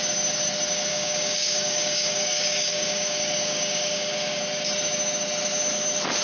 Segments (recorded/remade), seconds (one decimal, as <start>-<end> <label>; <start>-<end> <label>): 0.0-0.9 recorded; 0.9-4.4 remade; 4.4-6.2 recorded